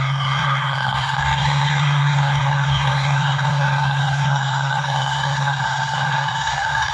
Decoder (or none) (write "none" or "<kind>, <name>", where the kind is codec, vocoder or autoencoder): codec, SNAC